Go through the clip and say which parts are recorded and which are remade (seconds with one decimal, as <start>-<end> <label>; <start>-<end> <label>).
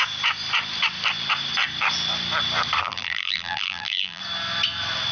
0.0-2.8 recorded; 2.8-4.2 remade; 4.2-5.1 recorded